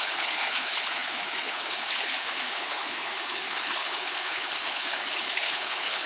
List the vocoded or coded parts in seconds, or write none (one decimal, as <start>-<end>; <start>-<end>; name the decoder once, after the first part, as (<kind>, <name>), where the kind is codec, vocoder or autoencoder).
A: 0.0-6.1 (codec, HILCodec)